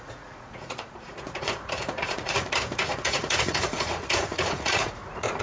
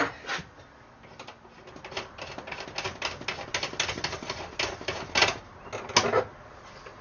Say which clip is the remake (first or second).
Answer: first